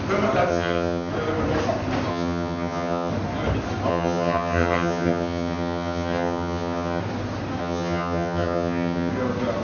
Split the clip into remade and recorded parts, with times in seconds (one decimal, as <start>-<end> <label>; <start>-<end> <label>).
0.0-0.5 recorded; 0.5-1.1 remade; 1.1-2.1 recorded; 2.1-3.1 remade; 3.1-3.9 recorded; 3.9-7.0 remade; 7.0-7.6 recorded; 7.6-9.1 remade; 9.1-9.6 recorded